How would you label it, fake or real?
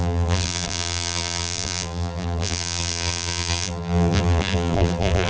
fake